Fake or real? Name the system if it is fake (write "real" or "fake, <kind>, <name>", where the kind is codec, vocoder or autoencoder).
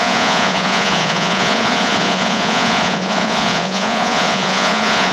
fake, vocoder, Vocos